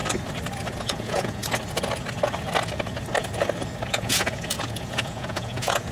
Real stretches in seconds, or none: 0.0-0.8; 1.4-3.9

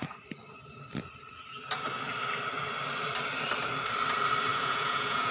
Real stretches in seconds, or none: 0.0-4.5